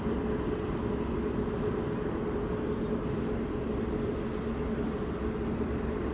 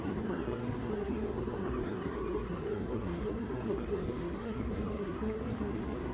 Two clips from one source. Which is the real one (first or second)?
first